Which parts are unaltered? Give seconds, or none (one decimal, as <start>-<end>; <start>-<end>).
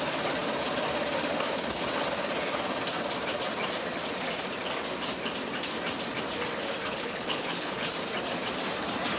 0.0-6.8; 7.9-9.2